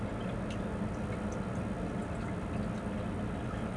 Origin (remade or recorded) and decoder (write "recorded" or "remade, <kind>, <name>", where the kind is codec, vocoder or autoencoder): recorded